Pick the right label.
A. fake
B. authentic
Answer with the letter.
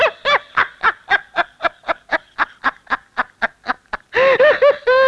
B